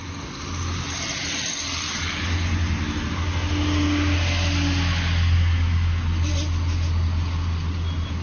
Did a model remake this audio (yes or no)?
no